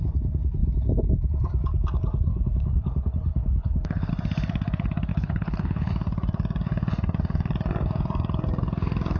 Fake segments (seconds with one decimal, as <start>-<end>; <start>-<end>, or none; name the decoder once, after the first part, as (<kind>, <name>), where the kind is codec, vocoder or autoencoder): 2.3-4.1 (codec, HILCodec); 5.1-5.9